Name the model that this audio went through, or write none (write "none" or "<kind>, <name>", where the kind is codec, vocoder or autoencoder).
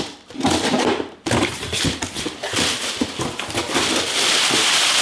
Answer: vocoder, BigVGAN v2